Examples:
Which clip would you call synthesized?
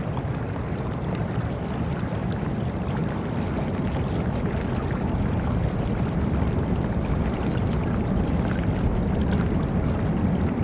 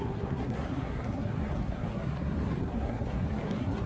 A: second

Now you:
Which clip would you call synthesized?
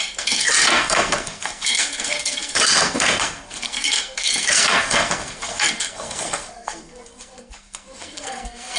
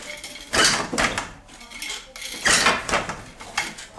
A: first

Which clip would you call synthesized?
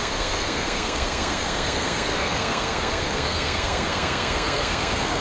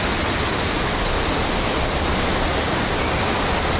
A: first